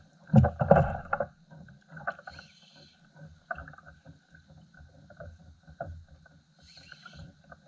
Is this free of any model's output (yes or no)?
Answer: yes